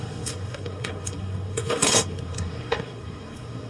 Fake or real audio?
fake